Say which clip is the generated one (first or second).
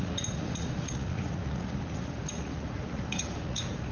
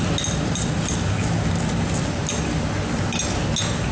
first